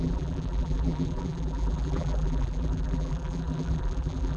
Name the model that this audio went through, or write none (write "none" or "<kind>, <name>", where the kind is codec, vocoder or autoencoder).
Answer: vocoder, BigVGAN v2